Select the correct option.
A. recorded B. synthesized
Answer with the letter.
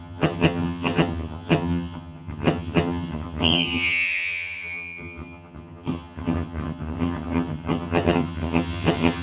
B